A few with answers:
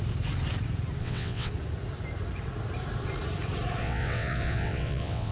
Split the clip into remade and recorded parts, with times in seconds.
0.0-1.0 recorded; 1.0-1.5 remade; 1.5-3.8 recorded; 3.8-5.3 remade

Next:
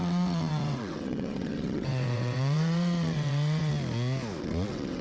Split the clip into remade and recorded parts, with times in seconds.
0.0-3.7 remade; 3.7-4.4 recorded; 4.4-5.0 remade